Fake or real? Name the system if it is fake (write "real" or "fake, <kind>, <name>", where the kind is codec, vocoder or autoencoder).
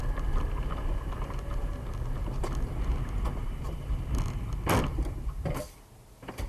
real